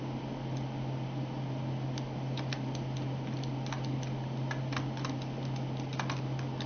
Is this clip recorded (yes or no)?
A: yes